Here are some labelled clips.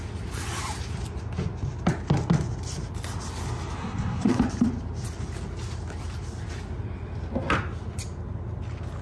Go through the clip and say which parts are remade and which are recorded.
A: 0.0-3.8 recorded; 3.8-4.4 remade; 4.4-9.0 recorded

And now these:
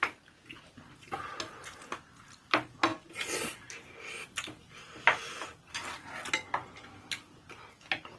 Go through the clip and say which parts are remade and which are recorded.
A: 0.0-2.9 recorded; 2.9-3.7 remade; 3.7-8.2 recorded

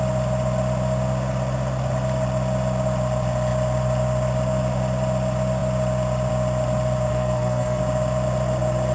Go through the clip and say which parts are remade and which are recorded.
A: 0.0-7.1 recorded; 7.1-7.8 remade; 7.8-8.9 recorded

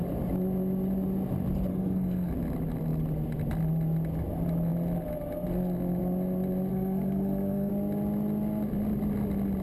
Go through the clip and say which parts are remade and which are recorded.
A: 0.0-1.7 recorded; 1.7-2.3 remade; 2.3-6.7 recorded; 6.7-7.7 remade; 7.7-9.6 recorded

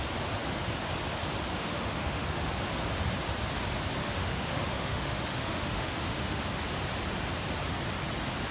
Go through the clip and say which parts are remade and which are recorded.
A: 0.0-1.5 recorded; 1.5-2.5 remade; 2.5-4.0 recorded; 4.0-6.4 remade; 6.4-8.5 recorded

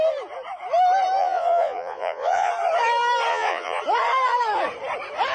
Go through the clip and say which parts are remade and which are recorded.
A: 0.0-1.2 recorded; 1.2-2.5 remade; 2.5-3.3 recorded; 3.3-3.8 remade; 3.8-5.3 recorded

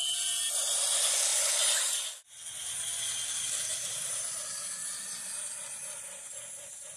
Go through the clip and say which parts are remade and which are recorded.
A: 0.0-3.7 recorded; 3.7-4.4 remade; 4.4-7.0 recorded

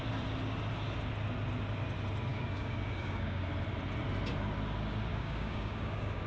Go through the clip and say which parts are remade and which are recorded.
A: 0.0-2.3 recorded; 2.3-3.5 remade; 3.5-5.1 recorded; 5.1-6.3 remade